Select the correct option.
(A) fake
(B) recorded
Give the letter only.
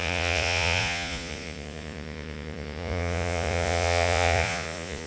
A